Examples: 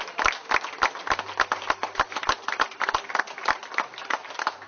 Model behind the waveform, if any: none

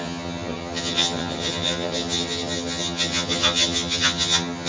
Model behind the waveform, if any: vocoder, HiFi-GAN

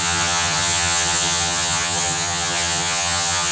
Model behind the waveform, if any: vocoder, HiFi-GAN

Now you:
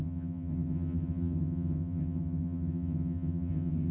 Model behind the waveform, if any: vocoder, HiFi-GAN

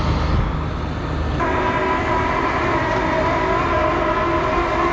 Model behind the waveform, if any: none